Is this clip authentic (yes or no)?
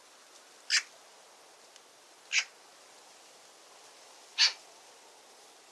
yes